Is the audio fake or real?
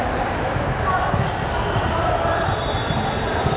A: real